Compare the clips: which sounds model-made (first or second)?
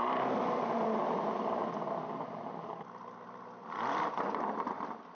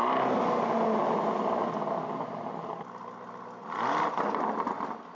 first